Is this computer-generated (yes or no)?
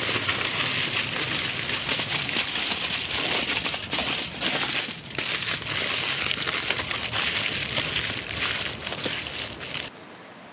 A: no